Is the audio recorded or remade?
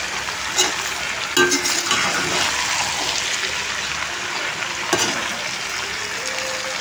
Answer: recorded